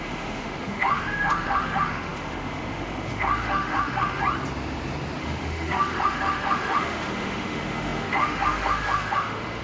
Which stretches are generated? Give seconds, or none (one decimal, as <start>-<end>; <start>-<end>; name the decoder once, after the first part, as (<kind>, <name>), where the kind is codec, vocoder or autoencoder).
0.0-4.2 (autoencoder, DAC-VAE); 5.2-9.6